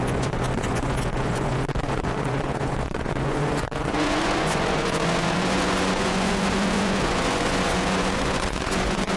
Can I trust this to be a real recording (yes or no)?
no